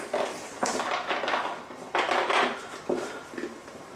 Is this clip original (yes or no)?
yes